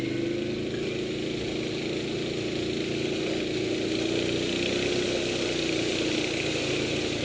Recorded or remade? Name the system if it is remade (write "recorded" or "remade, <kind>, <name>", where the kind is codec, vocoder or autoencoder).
recorded